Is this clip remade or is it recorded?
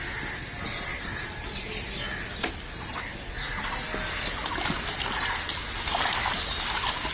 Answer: recorded